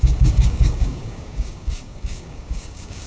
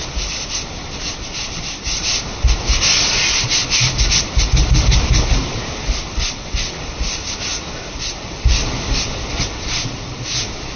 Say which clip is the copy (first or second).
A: first